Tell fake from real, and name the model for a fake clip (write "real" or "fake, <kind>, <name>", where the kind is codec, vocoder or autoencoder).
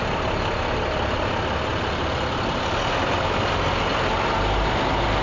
real